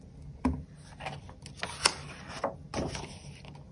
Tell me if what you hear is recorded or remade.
recorded